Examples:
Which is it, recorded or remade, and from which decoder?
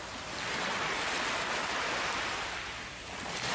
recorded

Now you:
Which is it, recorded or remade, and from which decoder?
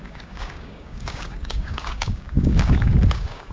remade, codec, DAC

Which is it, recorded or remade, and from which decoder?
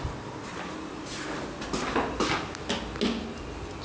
recorded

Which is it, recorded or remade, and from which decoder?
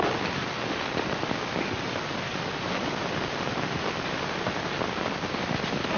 recorded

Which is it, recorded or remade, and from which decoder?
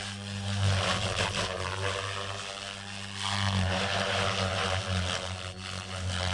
recorded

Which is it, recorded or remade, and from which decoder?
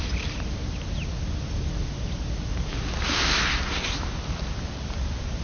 recorded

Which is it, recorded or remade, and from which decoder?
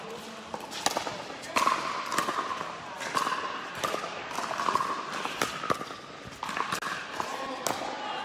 recorded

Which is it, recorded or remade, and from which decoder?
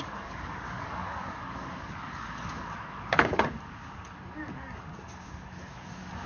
remade, codec, DAC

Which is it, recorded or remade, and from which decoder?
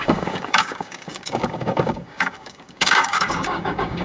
remade, codec, DAC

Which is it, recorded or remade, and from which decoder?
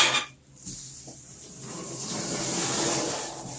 recorded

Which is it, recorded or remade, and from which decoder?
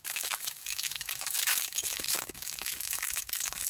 remade, codec, DAC